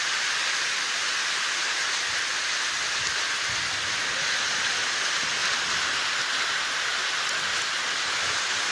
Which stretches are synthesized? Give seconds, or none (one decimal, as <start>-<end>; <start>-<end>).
5.4-6.1